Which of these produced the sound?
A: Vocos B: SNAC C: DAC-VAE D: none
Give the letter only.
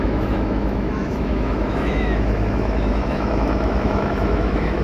C